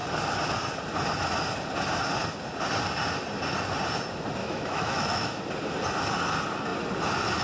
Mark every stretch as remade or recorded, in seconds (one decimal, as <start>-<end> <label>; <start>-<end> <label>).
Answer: 0.0-4.4 recorded; 4.4-5.4 remade; 5.4-7.4 recorded